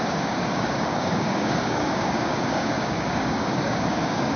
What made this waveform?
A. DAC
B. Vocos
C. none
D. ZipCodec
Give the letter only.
A